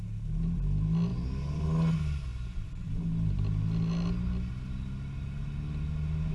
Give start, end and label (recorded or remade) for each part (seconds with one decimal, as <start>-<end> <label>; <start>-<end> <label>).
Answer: 0.0-6.3 recorded